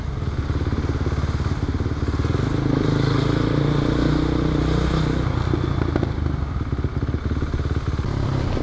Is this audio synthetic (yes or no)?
no